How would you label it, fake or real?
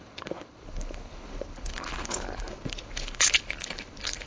fake